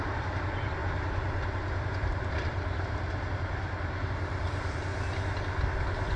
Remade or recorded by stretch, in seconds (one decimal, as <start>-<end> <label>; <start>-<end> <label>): 0.0-0.8 remade; 0.8-2.3 recorded; 2.3-4.9 remade; 4.9-6.2 recorded